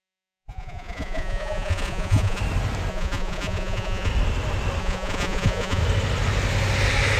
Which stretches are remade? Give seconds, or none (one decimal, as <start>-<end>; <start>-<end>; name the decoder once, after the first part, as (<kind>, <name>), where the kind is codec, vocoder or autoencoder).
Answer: 0.0-2.4 (vocoder, Vocos); 2.9-4.1; 4.8-5.8